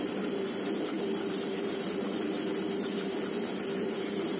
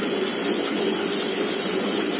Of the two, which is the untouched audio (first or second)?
first